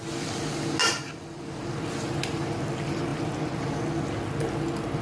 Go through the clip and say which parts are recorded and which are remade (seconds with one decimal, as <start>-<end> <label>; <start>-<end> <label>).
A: 0.0-5.0 recorded